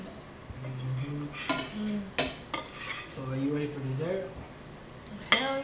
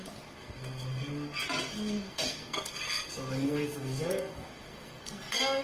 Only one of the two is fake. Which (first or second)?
second